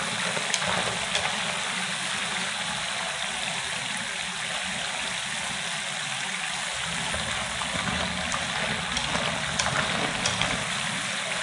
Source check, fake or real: real